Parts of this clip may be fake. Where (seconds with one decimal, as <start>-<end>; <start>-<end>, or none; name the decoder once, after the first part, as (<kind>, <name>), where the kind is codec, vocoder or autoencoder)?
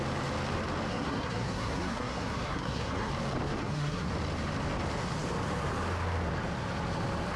0.9-3.1 (codec, SNAC); 3.6-4.1